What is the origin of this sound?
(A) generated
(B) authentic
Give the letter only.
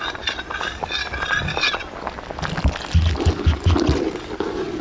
B